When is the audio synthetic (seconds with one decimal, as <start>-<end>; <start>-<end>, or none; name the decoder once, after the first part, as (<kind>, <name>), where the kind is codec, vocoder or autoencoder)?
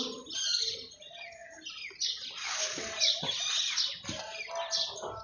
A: none